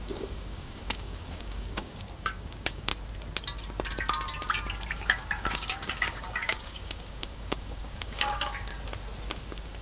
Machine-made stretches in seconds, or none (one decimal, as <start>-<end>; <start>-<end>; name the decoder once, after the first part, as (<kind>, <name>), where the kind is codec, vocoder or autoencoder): 0.0-2.9 (codec, DAC); 4.9-8.7; 9.4-9.8